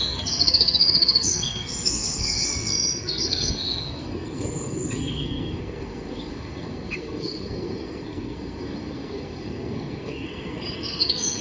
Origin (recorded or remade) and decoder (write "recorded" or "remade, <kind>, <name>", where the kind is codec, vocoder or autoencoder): remade, codec, SNAC